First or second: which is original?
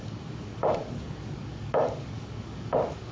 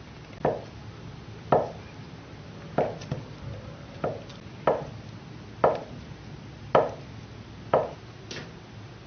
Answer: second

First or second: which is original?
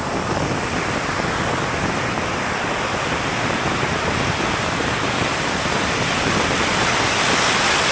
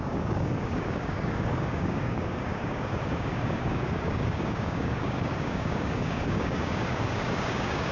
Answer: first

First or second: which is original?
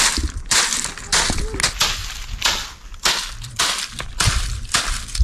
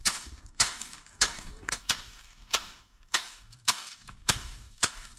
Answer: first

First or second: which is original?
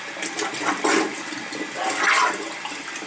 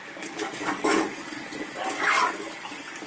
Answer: first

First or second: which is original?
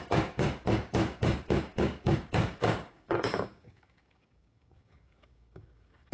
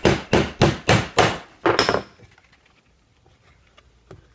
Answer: second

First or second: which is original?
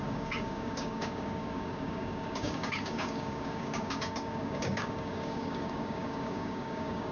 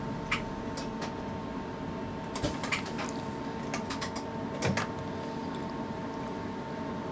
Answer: second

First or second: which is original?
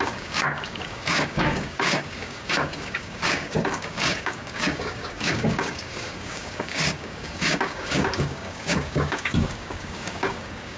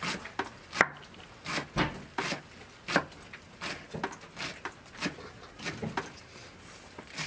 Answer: second